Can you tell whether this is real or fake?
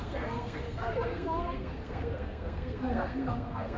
fake